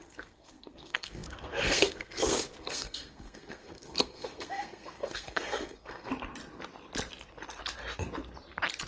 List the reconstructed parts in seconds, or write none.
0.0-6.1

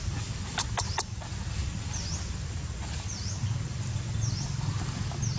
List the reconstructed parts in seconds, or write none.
1.6-4.8

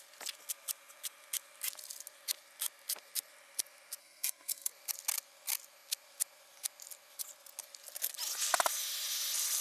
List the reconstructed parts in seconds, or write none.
4.0-4.7